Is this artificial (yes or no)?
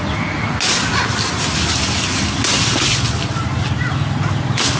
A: no